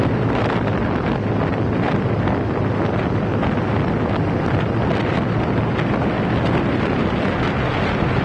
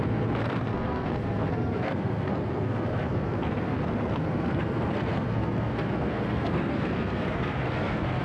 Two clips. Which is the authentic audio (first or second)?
first